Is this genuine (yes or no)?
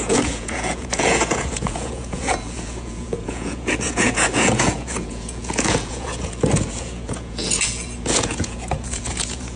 no